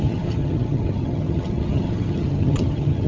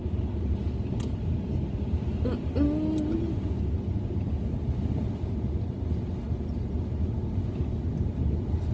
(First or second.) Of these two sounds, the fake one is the first